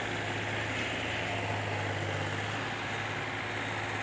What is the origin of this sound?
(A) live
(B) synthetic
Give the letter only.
A